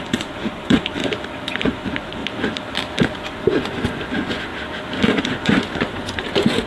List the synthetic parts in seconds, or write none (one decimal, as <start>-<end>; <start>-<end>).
0.0-1.0; 1.6-2.2; 3.1-4.5; 5.2-6.7